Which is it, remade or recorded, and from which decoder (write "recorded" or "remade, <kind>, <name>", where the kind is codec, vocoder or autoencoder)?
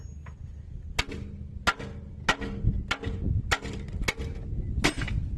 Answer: recorded